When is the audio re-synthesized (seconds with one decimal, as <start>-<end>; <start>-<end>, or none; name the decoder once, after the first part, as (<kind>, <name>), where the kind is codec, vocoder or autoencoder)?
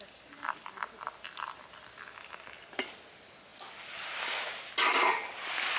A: none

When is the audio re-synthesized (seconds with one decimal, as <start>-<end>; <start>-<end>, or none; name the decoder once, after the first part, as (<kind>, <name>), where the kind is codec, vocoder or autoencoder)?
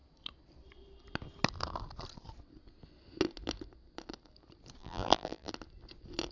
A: 4.8-5.5 (vocoder, BigVGAN v2)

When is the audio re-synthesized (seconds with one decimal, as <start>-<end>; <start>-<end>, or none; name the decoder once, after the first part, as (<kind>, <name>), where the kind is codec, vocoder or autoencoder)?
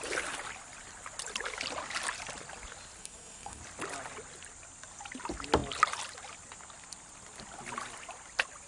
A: 3.0-3.6 (codec, SNAC)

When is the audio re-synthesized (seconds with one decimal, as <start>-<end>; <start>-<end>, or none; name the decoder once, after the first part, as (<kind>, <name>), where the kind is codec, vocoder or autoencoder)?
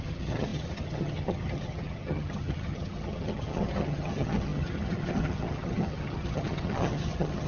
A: 0.0-7.5 (vocoder, HiFi-GAN)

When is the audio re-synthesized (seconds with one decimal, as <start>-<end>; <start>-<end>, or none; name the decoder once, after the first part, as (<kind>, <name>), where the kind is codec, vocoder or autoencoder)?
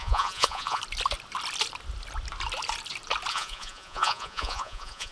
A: 0.0-0.8 (vocoder, Vocos); 3.3-5.1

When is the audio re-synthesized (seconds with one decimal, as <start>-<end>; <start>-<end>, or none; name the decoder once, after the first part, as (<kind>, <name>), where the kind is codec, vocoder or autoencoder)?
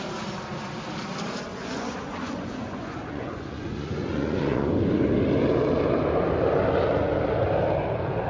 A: 1.5-4.7 (vocoder, Vocos)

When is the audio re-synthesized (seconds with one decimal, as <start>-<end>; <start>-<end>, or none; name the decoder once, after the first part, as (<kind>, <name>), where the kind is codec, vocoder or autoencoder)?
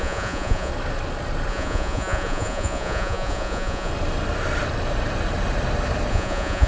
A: 0.0-0.7 (vocoder, Vocos); 1.5-3.9; 6.1-6.7